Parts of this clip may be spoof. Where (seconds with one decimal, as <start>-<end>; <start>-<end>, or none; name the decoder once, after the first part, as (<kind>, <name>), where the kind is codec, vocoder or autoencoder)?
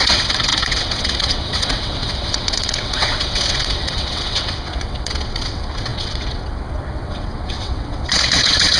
0.0-8.8 (vocoder, WaveNeXt)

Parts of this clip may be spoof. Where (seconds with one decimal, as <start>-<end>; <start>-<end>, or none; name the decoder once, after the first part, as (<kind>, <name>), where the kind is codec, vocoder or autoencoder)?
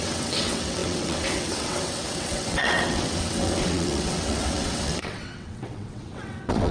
0.0-6.7 (vocoder, WaveNeXt)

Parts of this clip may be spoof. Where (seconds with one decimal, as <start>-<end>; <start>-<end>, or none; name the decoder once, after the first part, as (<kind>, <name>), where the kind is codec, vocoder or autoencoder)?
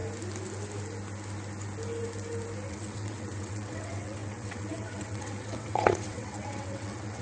2.7-7.2 (vocoder, WaveNeXt)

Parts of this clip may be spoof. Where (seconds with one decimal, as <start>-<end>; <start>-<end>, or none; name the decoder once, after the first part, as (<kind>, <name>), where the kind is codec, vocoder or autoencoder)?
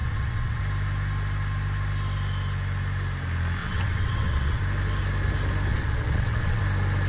0.0-0.6 (vocoder, WaveNeXt); 3.6-4.6; 5.7-6.6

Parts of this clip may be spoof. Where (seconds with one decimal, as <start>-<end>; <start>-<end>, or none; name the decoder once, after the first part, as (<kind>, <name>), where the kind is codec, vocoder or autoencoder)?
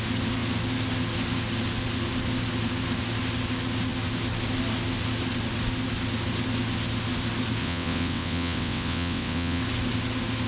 7.6-9.6 (vocoder, WaveNeXt)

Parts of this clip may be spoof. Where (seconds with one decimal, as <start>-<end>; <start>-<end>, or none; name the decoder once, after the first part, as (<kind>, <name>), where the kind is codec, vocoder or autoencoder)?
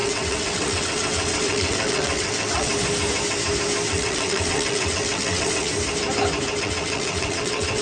0.0-2.7 (vocoder, WaveNeXt); 3.9-5.7; 6.6-7.8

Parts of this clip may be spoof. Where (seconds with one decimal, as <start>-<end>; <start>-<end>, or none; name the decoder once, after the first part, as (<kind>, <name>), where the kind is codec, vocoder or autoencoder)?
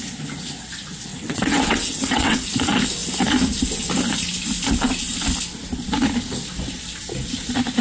1.1-2.5 (vocoder, WaveNeXt)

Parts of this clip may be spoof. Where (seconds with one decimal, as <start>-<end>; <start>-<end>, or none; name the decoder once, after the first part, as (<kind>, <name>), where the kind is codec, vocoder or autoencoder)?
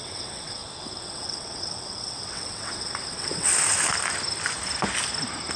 0.0-3.5 (vocoder, WaveNeXt)